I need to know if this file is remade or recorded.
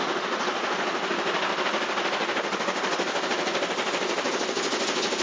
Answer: recorded